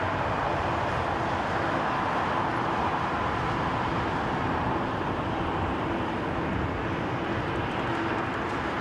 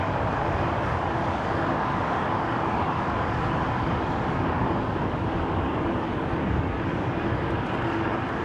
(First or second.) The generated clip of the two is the second